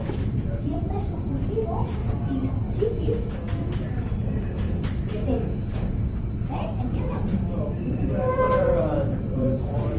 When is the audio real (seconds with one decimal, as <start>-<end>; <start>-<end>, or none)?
2.0-3.3; 5.1-7.1